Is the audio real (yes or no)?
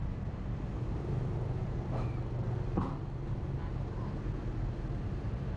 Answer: yes